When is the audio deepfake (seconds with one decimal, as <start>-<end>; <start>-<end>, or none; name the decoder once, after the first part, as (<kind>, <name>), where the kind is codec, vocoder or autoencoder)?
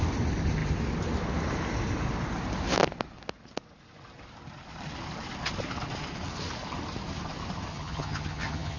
7.7-8.8 (vocoder, HiFi-GAN)